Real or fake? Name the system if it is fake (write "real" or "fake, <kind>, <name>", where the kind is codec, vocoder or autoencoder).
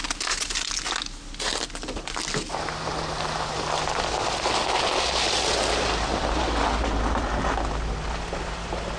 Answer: real